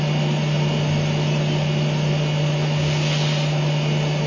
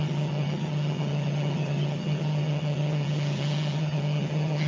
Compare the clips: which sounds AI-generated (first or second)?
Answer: second